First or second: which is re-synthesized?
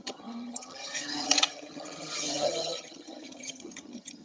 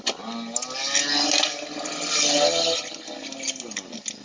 first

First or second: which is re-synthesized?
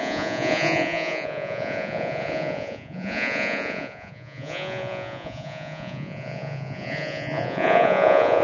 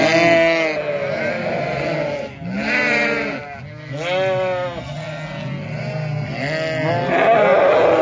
first